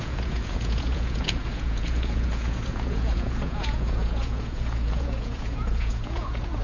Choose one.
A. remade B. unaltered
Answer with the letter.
A